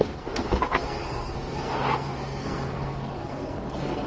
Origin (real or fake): fake